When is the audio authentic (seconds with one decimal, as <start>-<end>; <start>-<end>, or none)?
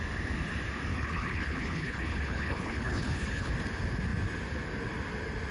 0.0-0.9; 3.5-5.5